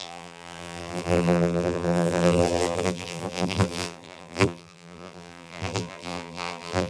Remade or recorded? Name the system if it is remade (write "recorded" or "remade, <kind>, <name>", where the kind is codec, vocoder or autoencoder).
remade, vocoder, BigVGAN v2